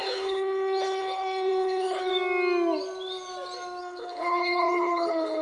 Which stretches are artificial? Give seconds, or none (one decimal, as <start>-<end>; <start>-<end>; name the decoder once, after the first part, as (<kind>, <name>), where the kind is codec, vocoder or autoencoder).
0.0-2.1 (codec, HILCodec); 3.8-5.4